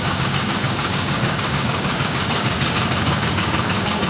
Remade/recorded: remade